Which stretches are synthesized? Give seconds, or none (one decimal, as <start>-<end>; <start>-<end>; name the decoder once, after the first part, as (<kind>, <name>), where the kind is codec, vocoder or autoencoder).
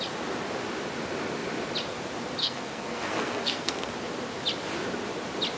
2.4-3.9 (codec, SNAC)